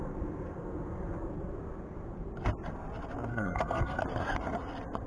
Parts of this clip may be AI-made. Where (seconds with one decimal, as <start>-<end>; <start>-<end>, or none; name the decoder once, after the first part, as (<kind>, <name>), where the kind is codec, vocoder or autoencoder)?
3.3-4.0 (codec, SNAC)